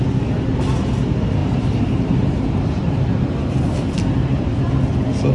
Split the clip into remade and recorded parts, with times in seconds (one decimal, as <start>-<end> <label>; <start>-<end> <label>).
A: 0.0-1.4 recorded; 1.4-4.6 remade; 4.6-5.3 recorded

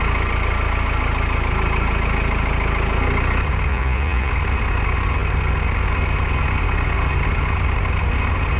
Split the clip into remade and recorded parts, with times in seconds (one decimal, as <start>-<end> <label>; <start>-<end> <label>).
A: 0.0-3.7 recorded; 3.7-4.3 remade; 4.3-8.6 recorded

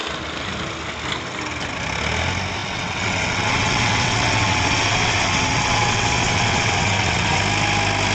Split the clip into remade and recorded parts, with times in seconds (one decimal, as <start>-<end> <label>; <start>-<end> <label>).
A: 0.0-2.6 recorded; 2.6-7.4 remade; 7.4-8.1 recorded

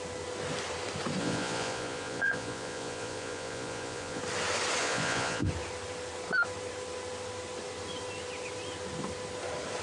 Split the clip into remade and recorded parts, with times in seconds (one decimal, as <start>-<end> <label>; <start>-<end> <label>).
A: 0.0-1.2 recorded; 1.2-4.2 remade; 4.2-4.8 recorded; 4.8-5.5 remade; 5.5-9.8 recorded

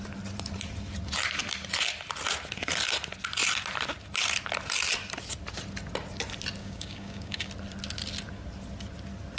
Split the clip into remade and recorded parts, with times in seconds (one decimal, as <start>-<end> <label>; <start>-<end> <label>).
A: 0.0-6.6 recorded; 6.6-7.5 remade; 7.5-9.4 recorded

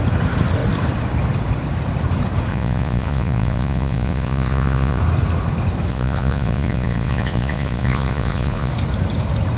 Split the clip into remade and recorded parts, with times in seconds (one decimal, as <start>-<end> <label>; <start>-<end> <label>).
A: 0.0-2.5 recorded; 2.5-5.0 remade; 5.0-5.9 recorded; 5.9-8.7 remade; 8.7-9.6 recorded

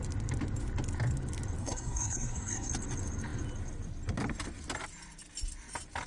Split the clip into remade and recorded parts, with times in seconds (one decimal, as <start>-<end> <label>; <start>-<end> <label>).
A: 0.0-1.6 recorded; 1.6-2.7 remade; 2.7-6.1 recorded

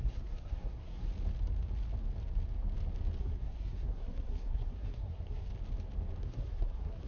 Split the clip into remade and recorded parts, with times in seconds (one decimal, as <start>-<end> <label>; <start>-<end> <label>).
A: 0.0-1.1 remade; 1.1-3.2 recorded; 3.2-5.5 remade; 5.5-6.2 recorded; 6.2-7.1 remade